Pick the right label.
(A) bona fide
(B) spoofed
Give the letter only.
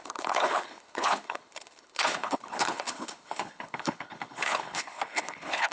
B